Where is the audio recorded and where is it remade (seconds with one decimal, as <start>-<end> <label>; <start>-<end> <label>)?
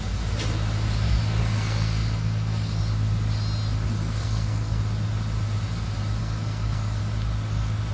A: 0.0-1.4 recorded; 1.4-2.8 remade; 2.8-4.0 recorded; 4.0-4.8 remade; 4.8-6.2 recorded; 6.2-7.0 remade; 7.0-7.9 recorded